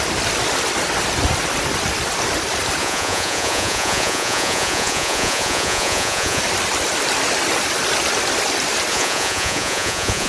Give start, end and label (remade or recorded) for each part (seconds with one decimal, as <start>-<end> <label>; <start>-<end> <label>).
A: 0.0-2.8 recorded; 2.8-6.4 remade; 6.4-8.9 recorded; 8.9-10.3 remade

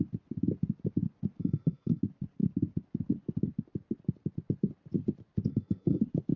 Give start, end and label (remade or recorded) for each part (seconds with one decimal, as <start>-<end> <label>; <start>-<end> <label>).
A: 0.0-1.4 recorded; 1.4-2.0 remade; 2.0-5.5 recorded; 5.5-6.0 remade; 6.0-6.4 recorded